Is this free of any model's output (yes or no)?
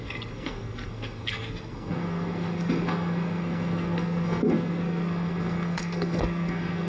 no